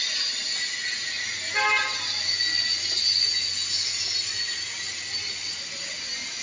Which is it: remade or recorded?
recorded